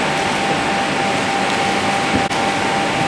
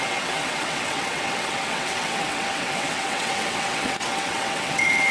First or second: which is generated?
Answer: second